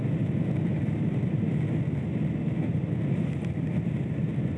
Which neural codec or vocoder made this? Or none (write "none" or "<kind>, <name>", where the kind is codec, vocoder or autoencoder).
none